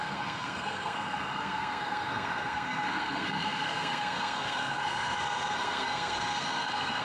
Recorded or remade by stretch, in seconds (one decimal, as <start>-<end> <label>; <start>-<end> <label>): 0.0-7.0 remade